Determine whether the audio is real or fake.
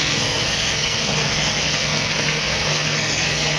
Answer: fake